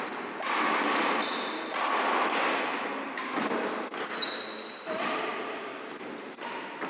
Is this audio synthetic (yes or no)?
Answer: no